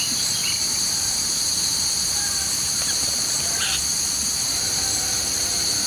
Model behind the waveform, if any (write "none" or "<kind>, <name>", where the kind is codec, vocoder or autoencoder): vocoder, BigVGAN v2